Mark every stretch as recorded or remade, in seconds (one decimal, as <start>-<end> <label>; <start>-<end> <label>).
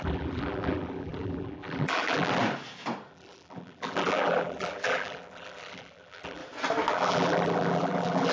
0.0-2.4 remade; 2.4-3.1 recorded; 3.1-6.4 remade; 6.4-6.9 recorded; 6.9-8.3 remade